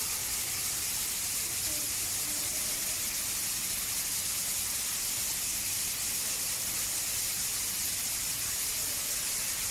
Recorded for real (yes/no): yes